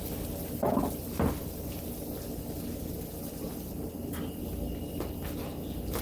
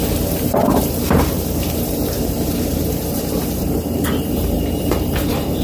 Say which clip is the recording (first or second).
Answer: first